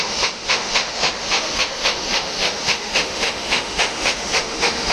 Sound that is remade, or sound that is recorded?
remade